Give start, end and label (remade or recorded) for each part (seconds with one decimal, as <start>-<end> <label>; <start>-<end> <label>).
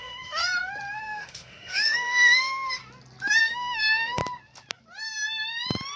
0.0-0.4 remade; 0.4-1.0 recorded; 1.0-2.8 remade; 2.8-3.4 recorded; 3.4-4.2 remade; 4.2-6.0 recorded